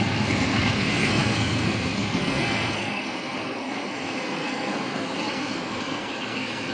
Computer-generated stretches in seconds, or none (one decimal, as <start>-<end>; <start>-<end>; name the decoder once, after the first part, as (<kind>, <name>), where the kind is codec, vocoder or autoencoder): 0.0-6.7 (codec, SNAC)